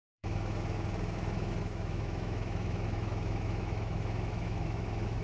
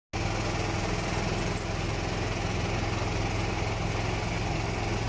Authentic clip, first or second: second